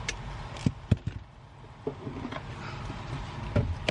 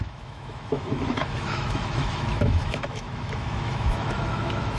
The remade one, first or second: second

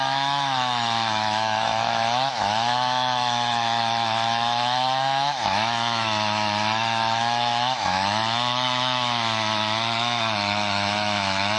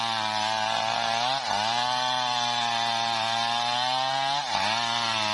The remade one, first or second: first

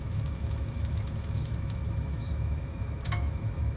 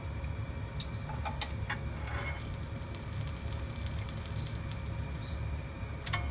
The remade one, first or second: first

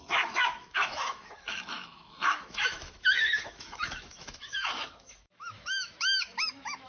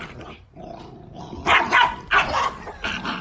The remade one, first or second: first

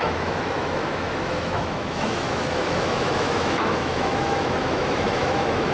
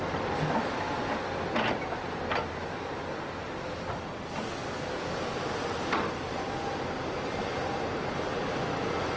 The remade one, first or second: first